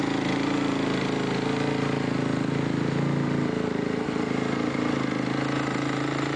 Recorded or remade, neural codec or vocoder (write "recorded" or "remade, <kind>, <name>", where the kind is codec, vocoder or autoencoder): recorded